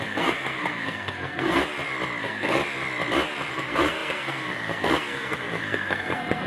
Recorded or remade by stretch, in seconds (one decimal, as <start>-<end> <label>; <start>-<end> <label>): 0.0-1.6 remade; 1.6-2.2 recorded; 2.2-2.6 remade; 2.6-3.5 recorded; 3.5-6.5 remade